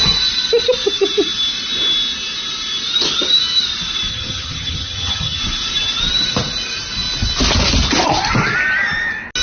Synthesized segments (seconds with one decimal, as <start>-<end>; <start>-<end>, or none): 4.1-5.4